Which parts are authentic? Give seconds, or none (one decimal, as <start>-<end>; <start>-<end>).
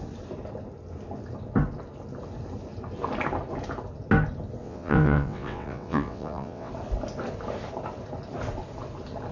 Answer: 0.0-4.6; 6.7-9.3